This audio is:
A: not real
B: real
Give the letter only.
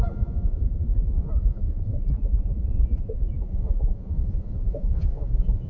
A